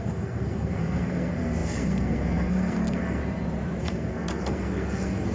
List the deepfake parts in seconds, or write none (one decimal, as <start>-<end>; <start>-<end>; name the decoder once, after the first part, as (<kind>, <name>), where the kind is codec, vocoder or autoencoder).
0.0-3.2 (codec, SNAC); 3.8-5.3